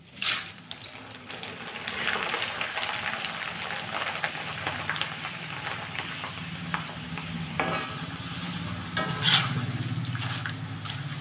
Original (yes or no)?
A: yes